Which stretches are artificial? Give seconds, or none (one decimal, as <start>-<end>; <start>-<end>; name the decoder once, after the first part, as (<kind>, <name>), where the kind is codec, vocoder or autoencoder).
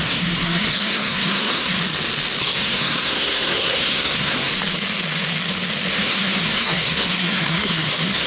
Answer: 0.0-1.8 (codec, SNAC); 2.4-4.5; 5.9-8.3